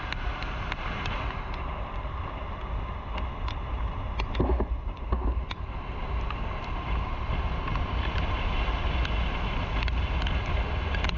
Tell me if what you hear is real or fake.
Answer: real